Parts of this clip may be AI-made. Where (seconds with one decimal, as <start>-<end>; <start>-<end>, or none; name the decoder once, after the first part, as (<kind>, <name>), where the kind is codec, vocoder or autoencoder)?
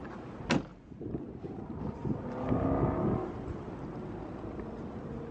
none